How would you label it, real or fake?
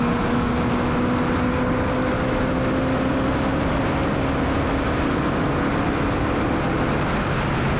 real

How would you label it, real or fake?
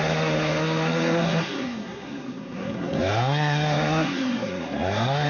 fake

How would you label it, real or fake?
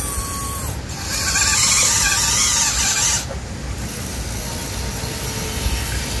real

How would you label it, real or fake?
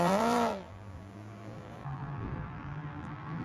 fake